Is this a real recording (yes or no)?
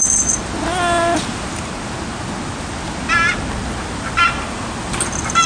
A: yes